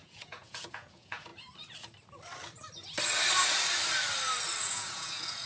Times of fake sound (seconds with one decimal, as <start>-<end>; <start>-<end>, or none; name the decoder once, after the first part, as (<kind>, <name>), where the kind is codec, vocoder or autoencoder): 0.0-1.3 (vocoder, Vocos); 4.6-5.5